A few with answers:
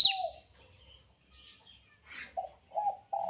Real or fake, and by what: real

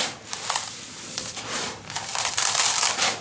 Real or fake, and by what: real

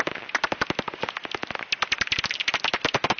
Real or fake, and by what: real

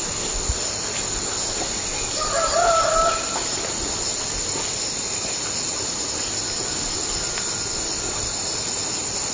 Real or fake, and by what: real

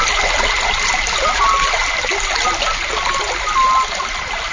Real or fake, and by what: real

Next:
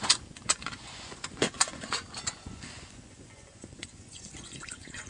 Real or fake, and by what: fake, vocoder, Vocos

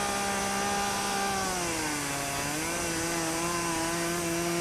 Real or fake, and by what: real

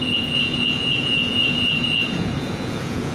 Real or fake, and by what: fake, vocoder, Vocos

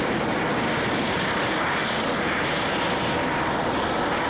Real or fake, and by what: real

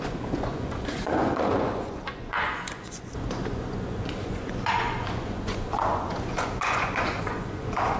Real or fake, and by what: fake, vocoder, Vocos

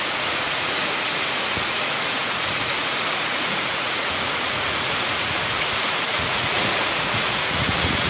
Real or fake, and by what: fake, vocoder, Vocos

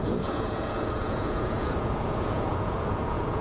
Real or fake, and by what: fake, vocoder, Vocos